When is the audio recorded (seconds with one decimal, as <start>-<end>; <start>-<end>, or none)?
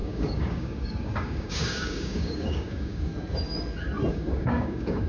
3.1-4.1